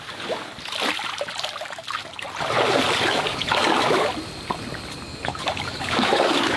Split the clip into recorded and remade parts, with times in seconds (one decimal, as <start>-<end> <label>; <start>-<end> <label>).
0.0-0.5 remade; 0.5-1.6 recorded; 1.6-2.0 remade; 2.0-3.1 recorded; 3.1-4.1 remade; 4.1-5.2 recorded; 5.2-6.6 remade